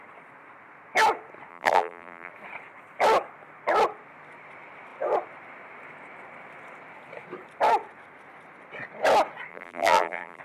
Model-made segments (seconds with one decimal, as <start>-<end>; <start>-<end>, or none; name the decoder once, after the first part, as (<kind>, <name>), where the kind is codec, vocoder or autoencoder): 1.5-2.3 (vocoder, BigVGAN v2); 9.5-10.4